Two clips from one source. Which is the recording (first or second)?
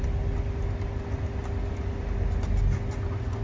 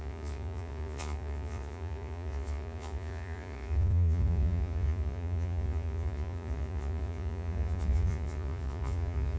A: first